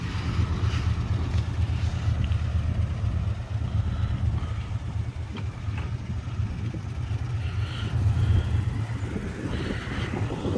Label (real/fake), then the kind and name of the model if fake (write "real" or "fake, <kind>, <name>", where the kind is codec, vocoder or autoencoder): real